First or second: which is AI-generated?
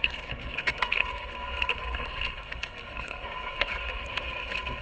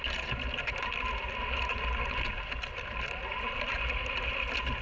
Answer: first